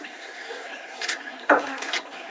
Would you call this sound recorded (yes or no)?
no